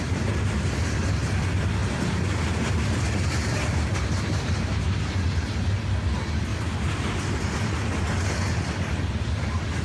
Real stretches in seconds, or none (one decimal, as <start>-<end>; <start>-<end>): 0.0-6.5; 8.0-9.8